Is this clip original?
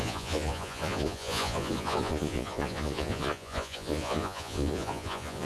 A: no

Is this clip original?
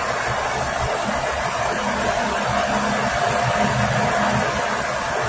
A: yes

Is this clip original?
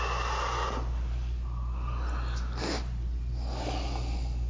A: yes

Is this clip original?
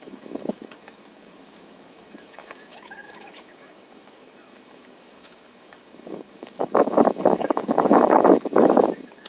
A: no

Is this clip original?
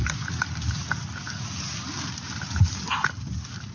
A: yes